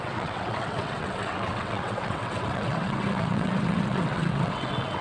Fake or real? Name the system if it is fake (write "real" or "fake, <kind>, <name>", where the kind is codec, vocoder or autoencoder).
fake, vocoder, WaveNeXt